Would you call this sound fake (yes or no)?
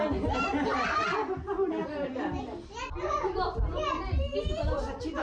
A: no